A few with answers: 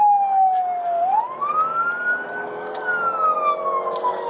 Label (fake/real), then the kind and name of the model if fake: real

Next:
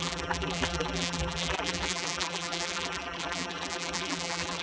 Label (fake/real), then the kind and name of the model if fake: fake, vocoder, BigVGAN v2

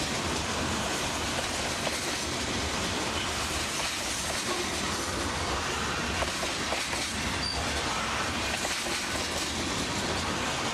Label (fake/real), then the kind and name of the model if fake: real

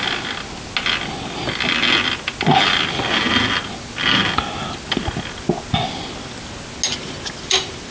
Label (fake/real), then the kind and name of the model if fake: real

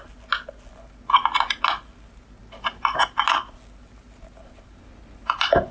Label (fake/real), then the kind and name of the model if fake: real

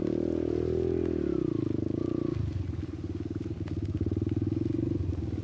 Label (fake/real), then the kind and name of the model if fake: real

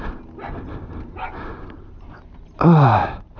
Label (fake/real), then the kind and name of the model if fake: real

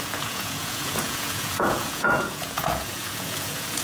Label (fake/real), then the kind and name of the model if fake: fake, vocoder, Vocos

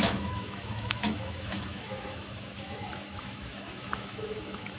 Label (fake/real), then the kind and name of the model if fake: fake, autoencoder, DAC-VAE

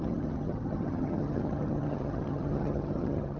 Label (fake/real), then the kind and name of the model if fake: fake, vocoder, HiFi-GAN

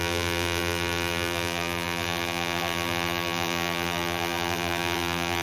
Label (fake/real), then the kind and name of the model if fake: fake, vocoder, BigVGAN v2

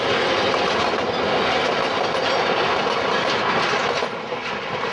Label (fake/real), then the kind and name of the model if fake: real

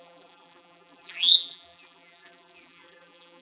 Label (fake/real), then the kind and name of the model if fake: fake, vocoder, BigVGAN v2